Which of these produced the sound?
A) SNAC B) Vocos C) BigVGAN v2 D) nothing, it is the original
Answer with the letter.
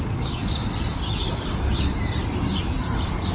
C